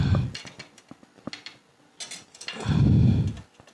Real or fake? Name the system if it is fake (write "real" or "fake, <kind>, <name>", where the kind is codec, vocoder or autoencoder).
real